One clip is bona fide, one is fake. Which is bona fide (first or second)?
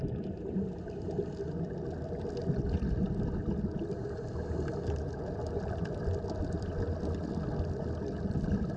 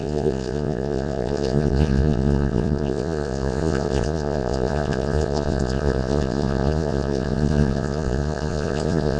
first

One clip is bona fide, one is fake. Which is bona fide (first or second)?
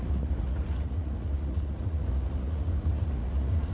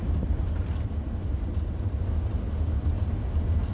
second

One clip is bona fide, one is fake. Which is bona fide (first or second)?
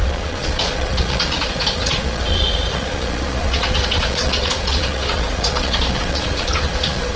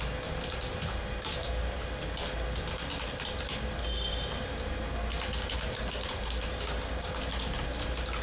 second